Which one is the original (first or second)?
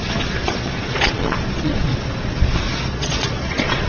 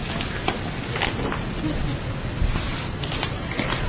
second